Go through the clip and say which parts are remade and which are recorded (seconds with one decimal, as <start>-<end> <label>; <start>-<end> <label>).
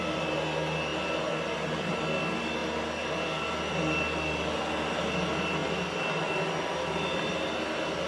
0.0-8.1 recorded